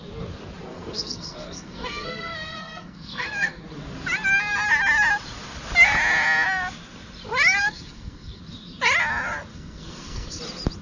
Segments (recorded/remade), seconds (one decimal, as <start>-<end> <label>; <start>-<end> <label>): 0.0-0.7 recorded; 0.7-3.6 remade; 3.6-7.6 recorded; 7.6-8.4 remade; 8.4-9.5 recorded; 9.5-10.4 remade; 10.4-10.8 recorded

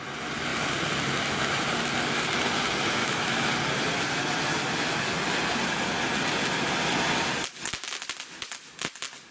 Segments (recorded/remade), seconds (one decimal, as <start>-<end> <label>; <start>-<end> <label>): 0.0-3.0 recorded; 3.0-3.5 remade; 3.5-9.3 recorded

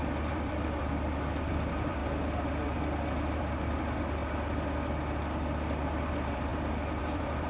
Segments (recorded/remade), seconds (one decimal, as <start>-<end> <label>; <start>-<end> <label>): 0.0-2.0 remade; 2.0-3.4 recorded; 3.4-4.2 remade; 4.2-6.1 recorded; 6.1-6.5 remade; 6.5-7.0 recorded; 7.0-7.5 remade

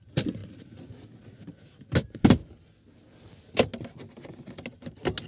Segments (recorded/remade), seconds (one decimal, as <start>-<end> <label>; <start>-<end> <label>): 0.0-5.3 recorded

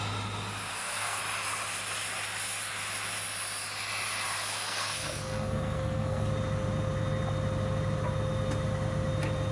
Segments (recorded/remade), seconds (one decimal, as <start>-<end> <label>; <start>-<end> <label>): 0.0-0.7 recorded; 0.7-1.2 remade; 1.2-4.5 recorded; 4.5-6.3 remade; 6.3-9.5 recorded

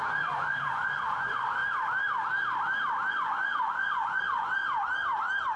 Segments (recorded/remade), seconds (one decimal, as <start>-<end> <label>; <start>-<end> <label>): 0.0-1.6 remade; 1.6-3.1 recorded; 3.1-4.6 remade; 4.6-5.6 recorded